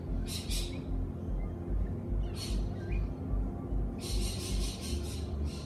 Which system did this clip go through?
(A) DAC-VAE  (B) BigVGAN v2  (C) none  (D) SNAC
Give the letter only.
C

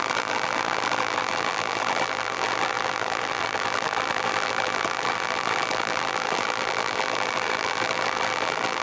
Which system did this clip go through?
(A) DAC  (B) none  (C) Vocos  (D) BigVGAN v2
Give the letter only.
D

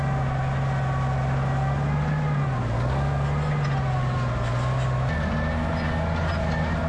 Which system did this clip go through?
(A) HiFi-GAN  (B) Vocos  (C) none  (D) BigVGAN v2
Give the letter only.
C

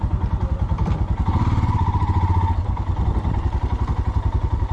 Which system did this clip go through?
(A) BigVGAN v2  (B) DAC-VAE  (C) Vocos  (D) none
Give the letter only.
D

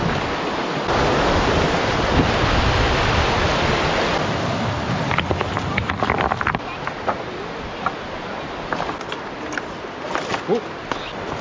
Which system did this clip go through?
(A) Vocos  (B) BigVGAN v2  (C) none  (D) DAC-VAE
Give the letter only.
C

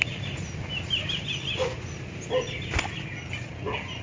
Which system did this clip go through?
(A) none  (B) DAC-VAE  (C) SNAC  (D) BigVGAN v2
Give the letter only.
A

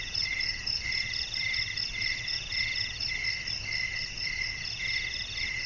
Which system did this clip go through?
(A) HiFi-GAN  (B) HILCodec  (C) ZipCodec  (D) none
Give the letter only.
D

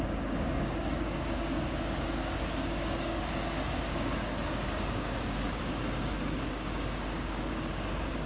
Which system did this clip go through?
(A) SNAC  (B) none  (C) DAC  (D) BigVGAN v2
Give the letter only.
C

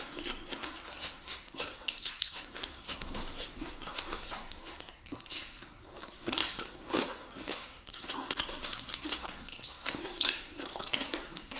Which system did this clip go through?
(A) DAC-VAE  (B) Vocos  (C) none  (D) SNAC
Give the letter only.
D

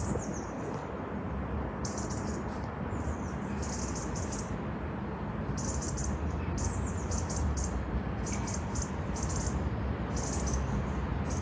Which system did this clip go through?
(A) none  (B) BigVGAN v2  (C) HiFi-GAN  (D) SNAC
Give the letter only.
A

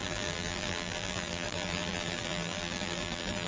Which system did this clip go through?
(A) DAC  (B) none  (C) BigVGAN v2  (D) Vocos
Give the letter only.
C